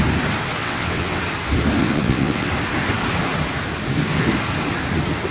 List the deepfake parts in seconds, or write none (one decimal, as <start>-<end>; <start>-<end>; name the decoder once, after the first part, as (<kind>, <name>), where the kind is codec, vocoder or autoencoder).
0.6-1.2 (vocoder, WaveNeXt); 1.8-2.5